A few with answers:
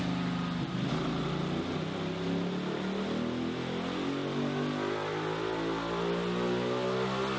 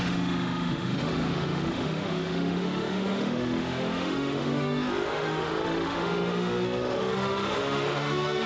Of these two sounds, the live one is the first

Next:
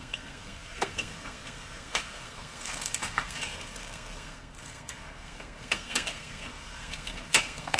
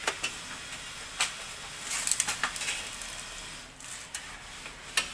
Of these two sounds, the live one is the second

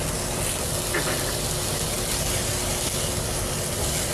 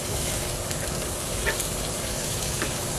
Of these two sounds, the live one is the first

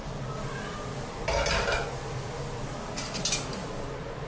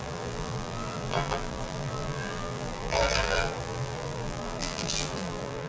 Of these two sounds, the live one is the first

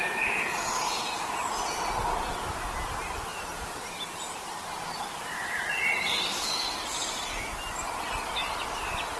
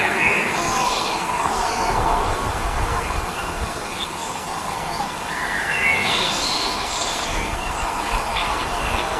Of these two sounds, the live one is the first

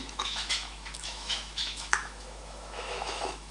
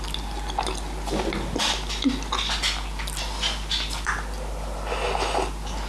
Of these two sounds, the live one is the second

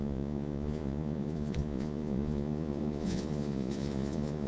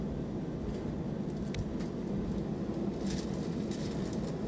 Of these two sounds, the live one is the second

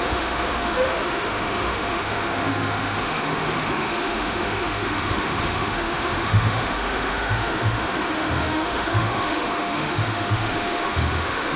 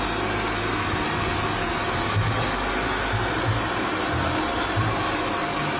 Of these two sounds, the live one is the second